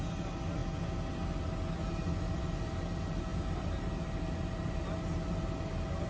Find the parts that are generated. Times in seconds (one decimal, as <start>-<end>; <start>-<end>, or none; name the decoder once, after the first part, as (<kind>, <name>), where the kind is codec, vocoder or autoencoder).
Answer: none

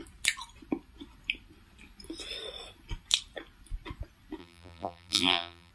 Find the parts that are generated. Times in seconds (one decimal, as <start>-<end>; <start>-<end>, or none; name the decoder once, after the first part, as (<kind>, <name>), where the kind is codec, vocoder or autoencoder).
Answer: 4.4-5.7 (vocoder, BigVGAN v2)

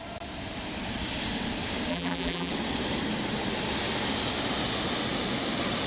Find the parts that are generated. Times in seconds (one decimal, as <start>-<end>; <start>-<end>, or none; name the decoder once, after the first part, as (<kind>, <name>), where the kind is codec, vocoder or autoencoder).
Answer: 1.9-2.5 (vocoder, BigVGAN v2)